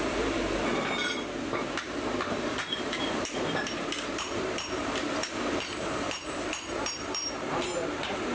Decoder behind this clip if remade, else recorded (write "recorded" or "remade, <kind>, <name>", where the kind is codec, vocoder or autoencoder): remade, vocoder, BigVGAN v2